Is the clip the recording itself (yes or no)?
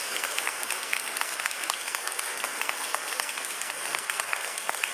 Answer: no